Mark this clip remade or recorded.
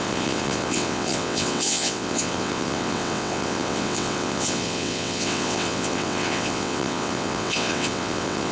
remade